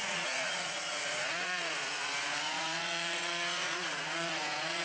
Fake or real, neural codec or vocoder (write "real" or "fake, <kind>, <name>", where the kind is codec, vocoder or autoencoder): fake, vocoder, Vocos